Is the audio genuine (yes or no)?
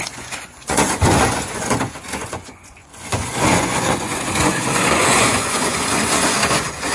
no